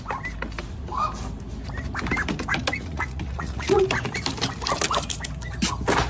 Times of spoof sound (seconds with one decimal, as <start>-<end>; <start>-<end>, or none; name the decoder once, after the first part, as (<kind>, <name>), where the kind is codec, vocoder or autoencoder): 2.7-3.8 (vocoder, Vocos)